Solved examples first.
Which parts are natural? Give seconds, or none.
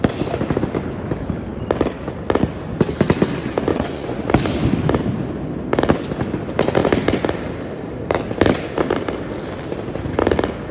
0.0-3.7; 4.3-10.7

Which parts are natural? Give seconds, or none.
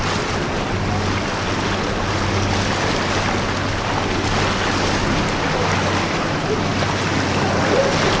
0.0-8.2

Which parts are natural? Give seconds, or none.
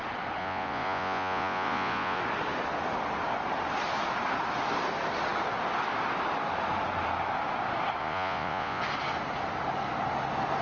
0.0-0.4; 2.2-8.0; 8.8-10.6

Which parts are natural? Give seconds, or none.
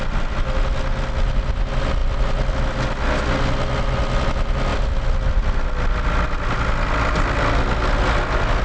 0.0-8.6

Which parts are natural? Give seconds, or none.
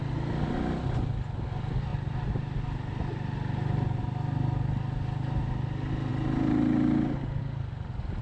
0.0-8.2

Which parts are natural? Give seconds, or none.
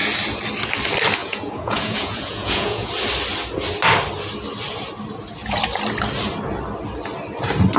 0.0-1.2; 2.9-7.8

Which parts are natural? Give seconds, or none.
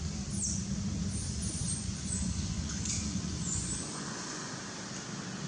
0.0-1.2; 4.5-5.5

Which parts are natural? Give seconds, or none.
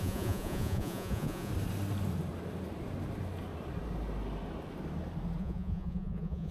1.5-5.4